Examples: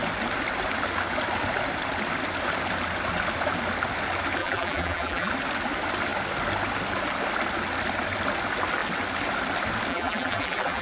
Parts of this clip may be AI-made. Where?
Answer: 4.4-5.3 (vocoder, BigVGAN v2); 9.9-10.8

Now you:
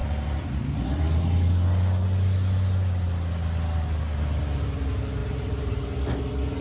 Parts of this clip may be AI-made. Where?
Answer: 5.2-5.8 (vocoder, BigVGAN v2)

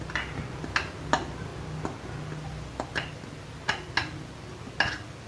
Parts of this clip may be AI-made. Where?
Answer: none

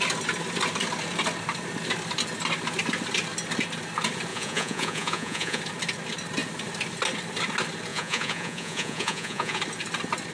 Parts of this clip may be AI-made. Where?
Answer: 4.3-5.6 (vocoder, Vocos); 7.9-9.6

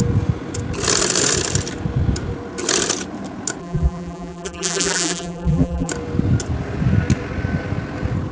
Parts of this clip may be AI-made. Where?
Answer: 3.6-5.9 (vocoder, BigVGAN v2)